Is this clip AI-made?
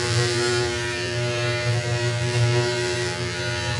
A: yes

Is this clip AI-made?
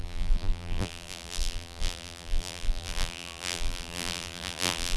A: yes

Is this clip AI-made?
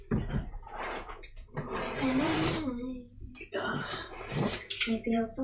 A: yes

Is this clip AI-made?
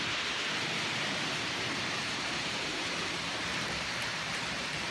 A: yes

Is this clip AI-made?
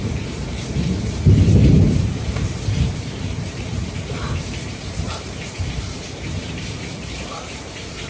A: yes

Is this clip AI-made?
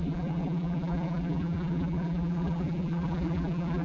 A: yes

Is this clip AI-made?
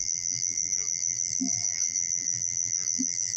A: yes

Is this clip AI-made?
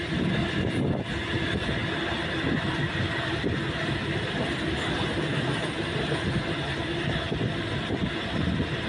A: no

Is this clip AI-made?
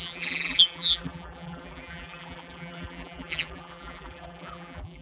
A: yes